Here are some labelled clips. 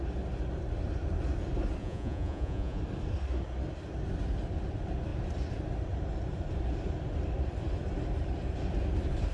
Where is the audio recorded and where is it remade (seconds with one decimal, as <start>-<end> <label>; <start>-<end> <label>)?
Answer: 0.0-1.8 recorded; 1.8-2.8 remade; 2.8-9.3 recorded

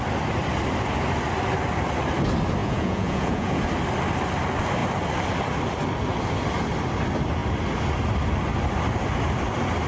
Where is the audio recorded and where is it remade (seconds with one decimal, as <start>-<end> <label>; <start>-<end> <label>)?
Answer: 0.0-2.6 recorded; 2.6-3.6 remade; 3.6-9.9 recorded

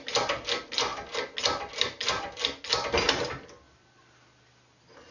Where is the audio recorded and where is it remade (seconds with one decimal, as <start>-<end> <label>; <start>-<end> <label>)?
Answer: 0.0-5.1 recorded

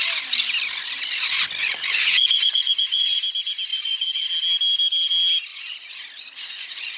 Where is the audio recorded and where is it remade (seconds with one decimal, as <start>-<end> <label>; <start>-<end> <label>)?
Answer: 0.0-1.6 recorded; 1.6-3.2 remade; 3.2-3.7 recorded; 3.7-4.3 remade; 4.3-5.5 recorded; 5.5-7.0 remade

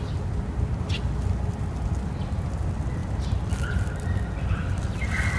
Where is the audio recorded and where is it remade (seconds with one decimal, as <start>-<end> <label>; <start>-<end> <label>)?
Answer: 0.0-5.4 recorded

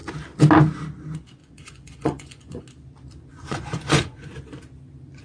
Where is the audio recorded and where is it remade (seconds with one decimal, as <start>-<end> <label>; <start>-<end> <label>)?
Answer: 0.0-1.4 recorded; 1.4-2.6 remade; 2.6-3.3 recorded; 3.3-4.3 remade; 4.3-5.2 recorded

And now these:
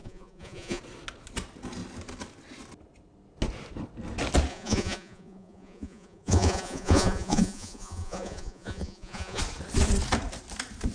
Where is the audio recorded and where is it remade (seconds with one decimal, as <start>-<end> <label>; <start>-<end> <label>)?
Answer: 0.0-0.8 remade; 0.8-4.5 recorded; 4.5-9.4 remade; 9.4-10.9 recorded

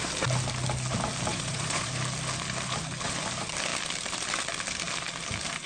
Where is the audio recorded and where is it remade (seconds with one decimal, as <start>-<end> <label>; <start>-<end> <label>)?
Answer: 0.0-1.3 recorded; 1.3-1.9 remade; 1.9-5.7 recorded